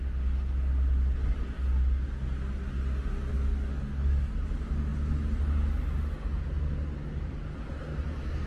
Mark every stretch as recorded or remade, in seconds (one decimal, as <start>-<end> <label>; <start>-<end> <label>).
0.0-3.3 recorded; 3.3-4.3 remade; 4.3-8.5 recorded